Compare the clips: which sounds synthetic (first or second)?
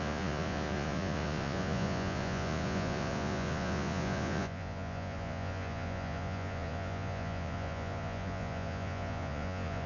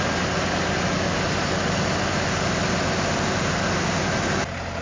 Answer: first